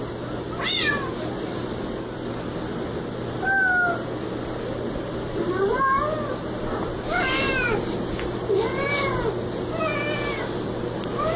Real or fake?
real